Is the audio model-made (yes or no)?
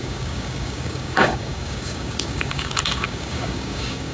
yes